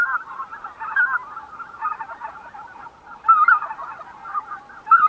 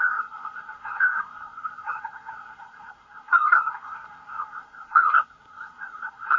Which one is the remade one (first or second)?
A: second